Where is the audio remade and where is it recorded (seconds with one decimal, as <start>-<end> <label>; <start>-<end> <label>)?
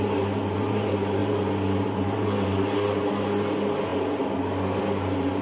0.0-5.4 recorded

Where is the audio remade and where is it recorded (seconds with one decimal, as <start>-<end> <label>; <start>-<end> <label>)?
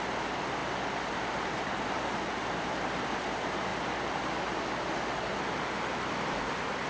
0.0-0.6 recorded; 0.6-2.9 remade; 2.9-6.9 recorded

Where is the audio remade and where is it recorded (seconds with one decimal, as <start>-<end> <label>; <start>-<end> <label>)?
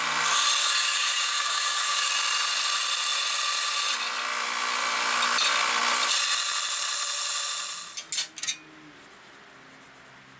0.0-0.6 recorded; 0.6-2.1 remade; 2.1-10.4 recorded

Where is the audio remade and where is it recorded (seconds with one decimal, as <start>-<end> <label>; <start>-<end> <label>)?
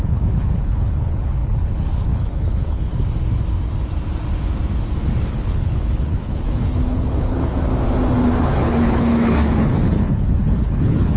0.0-2.9 remade; 2.9-5.3 recorded; 5.3-7.7 remade; 7.7-8.4 recorded; 8.4-11.2 remade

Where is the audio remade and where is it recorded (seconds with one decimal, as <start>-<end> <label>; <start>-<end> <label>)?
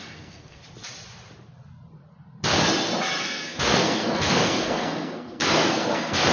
0.0-0.6 remade; 0.6-3.2 recorded; 3.2-6.3 remade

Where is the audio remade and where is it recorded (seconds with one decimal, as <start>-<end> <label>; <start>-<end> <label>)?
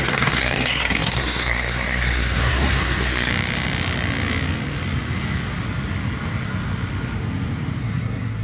0.0-3.3 remade; 3.3-7.8 recorded; 7.8-8.4 remade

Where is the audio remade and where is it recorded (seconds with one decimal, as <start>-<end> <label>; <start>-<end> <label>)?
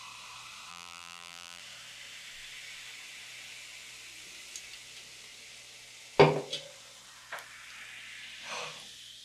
0.0-0.7 recorded; 0.7-1.6 remade; 1.6-9.2 recorded